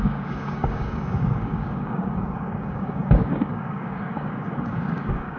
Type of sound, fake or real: fake